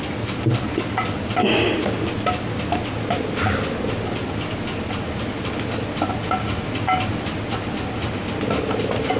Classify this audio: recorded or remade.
recorded